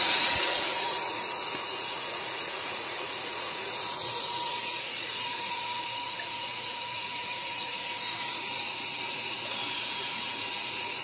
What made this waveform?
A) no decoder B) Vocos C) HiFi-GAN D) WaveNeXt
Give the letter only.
B